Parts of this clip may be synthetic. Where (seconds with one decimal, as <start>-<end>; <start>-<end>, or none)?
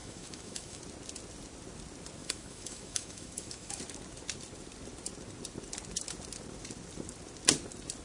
0.0-0.8; 2.2-3.8